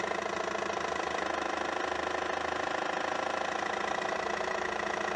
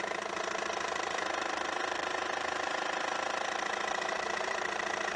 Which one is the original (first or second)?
first